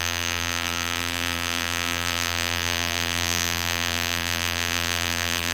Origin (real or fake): fake